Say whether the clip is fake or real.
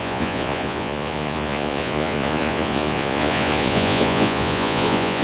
fake